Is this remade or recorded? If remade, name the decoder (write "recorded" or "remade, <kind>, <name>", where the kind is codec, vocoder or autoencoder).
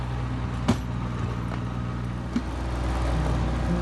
recorded